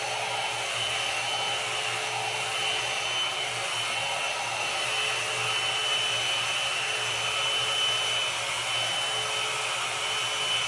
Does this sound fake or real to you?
real